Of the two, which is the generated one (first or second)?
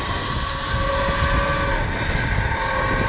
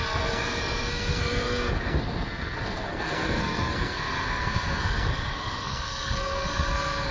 second